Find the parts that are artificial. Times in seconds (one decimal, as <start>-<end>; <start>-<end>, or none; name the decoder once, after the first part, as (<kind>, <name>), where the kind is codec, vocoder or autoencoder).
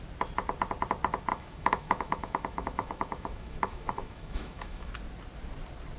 1.3-4.9 (autoencoder, DAC-VAE)